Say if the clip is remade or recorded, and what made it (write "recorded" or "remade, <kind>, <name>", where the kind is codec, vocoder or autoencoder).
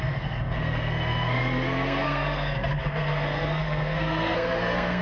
remade, codec, SNAC